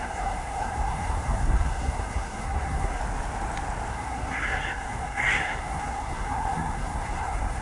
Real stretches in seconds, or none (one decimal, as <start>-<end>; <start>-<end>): 3.0-3.9